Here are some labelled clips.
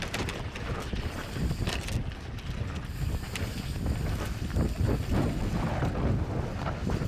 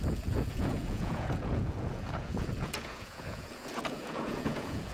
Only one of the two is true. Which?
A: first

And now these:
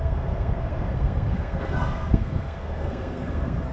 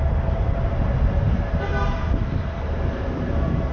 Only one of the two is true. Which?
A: second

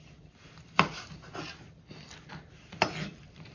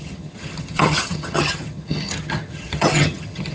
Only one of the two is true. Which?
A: first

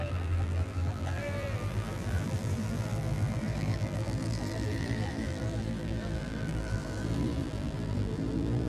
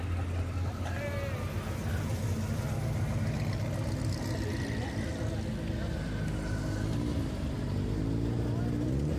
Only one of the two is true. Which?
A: second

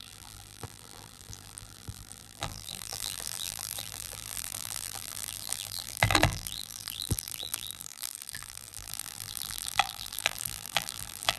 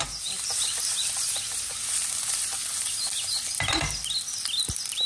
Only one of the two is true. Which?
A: second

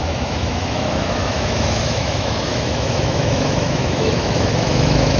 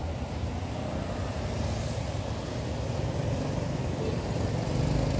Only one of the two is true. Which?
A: second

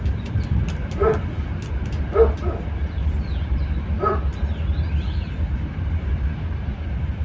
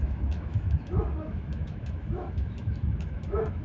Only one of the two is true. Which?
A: first